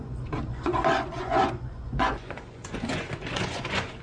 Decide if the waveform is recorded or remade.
remade